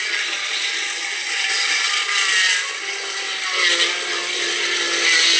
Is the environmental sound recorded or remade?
recorded